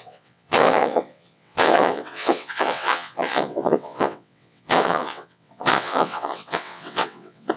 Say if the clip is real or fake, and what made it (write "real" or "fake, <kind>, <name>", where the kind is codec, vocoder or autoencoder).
fake, vocoder, WaveNeXt